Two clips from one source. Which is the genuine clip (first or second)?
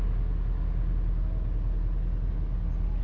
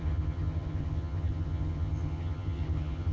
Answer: first